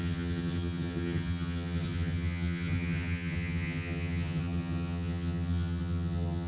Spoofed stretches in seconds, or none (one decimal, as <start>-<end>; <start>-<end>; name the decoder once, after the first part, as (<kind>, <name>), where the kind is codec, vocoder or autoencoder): 0.0-6.5 (vocoder, HiFi-GAN)